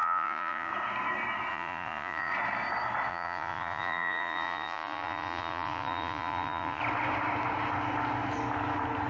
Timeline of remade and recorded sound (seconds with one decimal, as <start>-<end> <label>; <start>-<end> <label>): 0.0-0.7 remade; 0.7-1.5 recorded; 1.5-2.3 remade; 2.3-3.1 recorded; 3.1-6.8 remade; 6.8-9.1 recorded